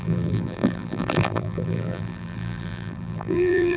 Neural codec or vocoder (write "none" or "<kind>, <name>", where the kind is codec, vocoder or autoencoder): vocoder, BigVGAN v2